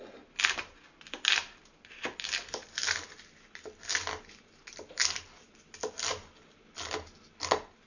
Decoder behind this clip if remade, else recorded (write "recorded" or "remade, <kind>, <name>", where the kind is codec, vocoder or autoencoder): recorded